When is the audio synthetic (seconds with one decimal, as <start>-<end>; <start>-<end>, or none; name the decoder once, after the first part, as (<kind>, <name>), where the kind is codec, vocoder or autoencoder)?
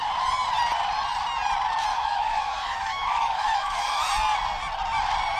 1.9-4.1 (autoencoder, DAC-VAE)